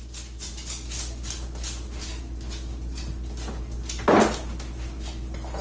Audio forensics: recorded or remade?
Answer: recorded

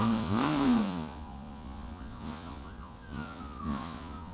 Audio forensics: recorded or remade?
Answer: remade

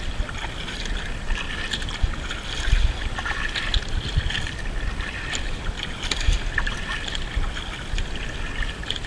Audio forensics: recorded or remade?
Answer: recorded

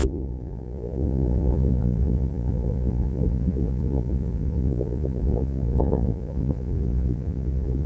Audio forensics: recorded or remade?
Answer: remade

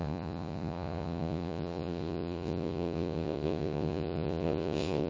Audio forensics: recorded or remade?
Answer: remade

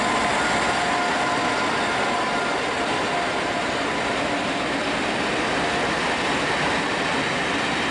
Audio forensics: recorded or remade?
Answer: recorded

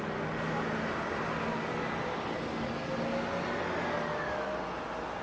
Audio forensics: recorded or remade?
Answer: recorded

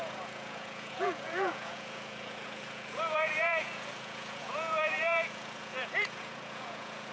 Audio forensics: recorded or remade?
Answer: remade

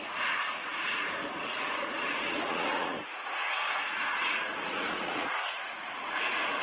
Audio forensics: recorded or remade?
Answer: remade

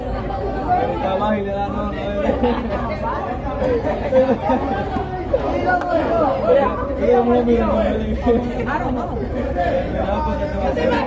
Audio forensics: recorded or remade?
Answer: recorded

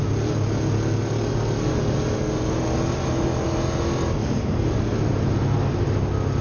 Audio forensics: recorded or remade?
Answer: recorded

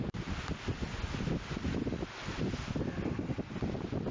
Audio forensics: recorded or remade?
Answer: recorded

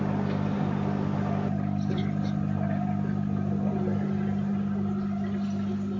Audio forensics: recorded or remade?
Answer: recorded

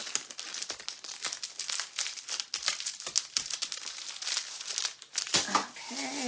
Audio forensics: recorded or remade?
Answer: recorded